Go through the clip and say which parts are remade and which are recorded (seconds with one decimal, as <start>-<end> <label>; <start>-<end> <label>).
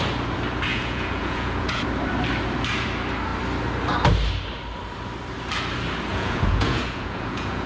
0.0-0.7 recorded; 0.7-1.8 remade; 1.8-6.1 recorded; 6.1-7.7 remade